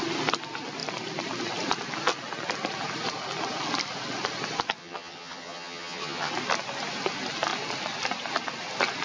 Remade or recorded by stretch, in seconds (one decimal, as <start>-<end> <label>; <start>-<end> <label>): 0.0-4.8 recorded; 4.8-6.3 remade; 6.3-9.0 recorded